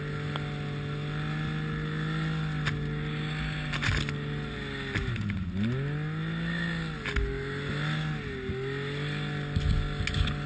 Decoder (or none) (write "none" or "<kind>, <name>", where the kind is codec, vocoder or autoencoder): none